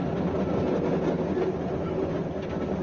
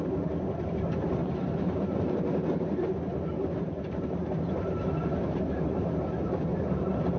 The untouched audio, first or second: first